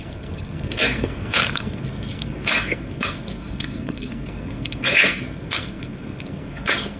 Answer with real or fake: fake